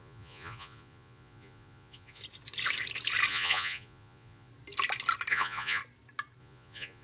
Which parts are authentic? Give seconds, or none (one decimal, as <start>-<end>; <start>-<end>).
2.2-3.3; 4.5-5.3; 5.8-6.4